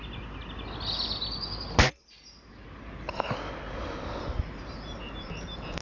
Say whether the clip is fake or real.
real